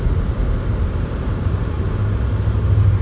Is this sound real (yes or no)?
yes